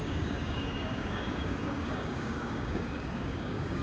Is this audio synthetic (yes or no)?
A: yes